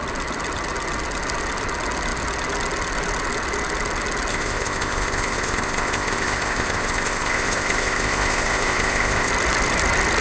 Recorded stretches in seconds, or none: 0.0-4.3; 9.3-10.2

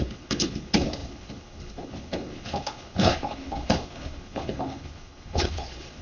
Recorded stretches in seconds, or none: none

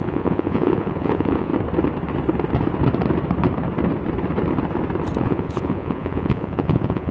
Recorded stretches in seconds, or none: 1.5-5.2

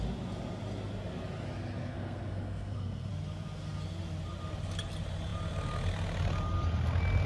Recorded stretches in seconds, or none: 0.0-1.8; 3.1-7.3

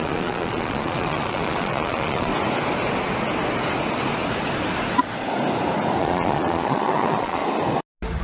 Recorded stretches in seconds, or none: 2.3-6.0; 7.4-8.2

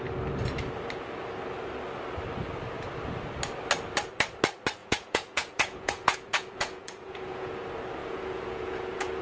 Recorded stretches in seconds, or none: 0.0-4.8; 7.5-8.0